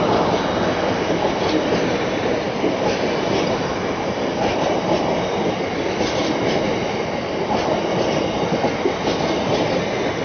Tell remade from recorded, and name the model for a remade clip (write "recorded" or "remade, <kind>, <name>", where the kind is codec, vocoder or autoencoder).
recorded